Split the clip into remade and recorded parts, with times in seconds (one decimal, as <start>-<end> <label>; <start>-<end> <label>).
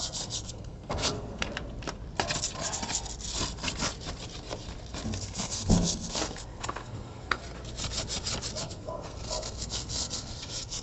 0.0-1.5 remade; 1.5-5.2 recorded; 5.2-7.4 remade; 7.4-8.6 recorded; 8.6-10.8 remade